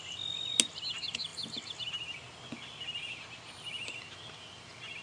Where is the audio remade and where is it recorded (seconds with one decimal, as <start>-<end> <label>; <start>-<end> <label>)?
0.0-5.0 recorded